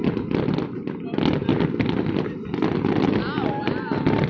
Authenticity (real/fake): real